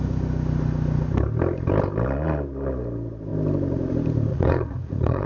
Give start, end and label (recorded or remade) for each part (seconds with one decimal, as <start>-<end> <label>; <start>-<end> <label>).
0.0-4.3 recorded; 4.3-5.3 remade